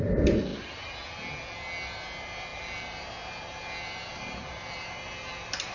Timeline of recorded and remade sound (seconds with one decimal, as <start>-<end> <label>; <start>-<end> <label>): 0.0-2.5 recorded; 2.5-3.1 remade; 3.1-4.1 recorded; 4.1-4.8 remade; 4.8-5.7 recorded